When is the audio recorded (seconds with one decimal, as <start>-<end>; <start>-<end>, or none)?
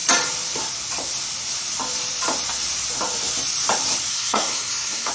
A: 0.0-4.1